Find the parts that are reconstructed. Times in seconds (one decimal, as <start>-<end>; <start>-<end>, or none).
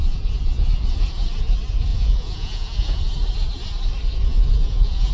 1.9-3.0; 4.3-5.1